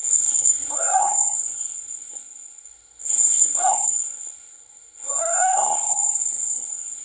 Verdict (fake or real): fake